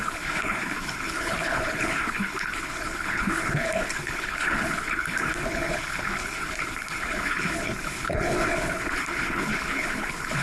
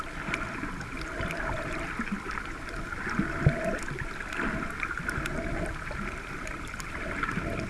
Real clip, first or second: second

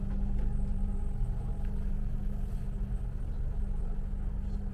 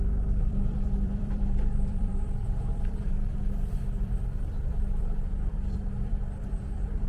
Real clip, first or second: first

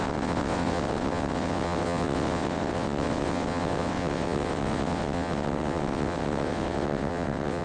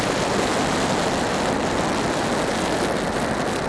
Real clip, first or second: second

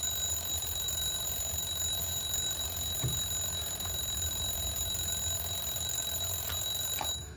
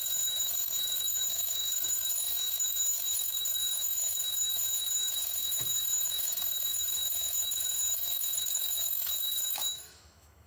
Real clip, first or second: first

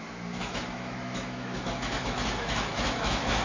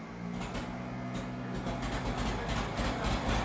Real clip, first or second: second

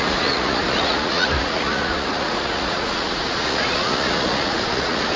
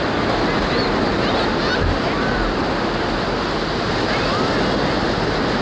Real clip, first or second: second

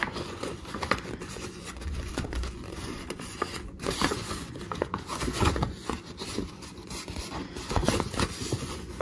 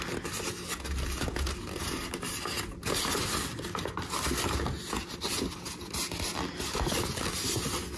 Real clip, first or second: second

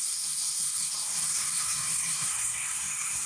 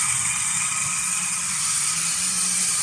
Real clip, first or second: second